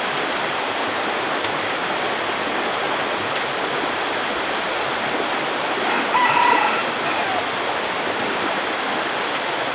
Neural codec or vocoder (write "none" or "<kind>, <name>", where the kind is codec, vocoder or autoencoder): none